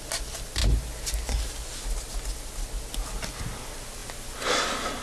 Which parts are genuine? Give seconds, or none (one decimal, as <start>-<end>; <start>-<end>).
0.0-5.0